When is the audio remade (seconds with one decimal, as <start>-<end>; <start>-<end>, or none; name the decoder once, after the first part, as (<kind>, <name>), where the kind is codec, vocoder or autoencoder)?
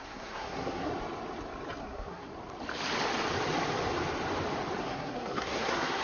0.0-0.9 (codec, SNAC); 1.8-2.3; 4.8-6.0